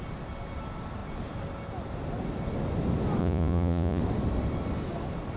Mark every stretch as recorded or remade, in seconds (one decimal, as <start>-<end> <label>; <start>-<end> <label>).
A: 0.0-3.2 recorded; 3.2-4.0 remade; 4.0-5.4 recorded